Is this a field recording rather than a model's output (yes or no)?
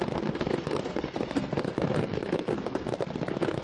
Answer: no